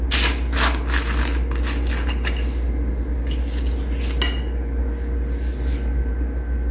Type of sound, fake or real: real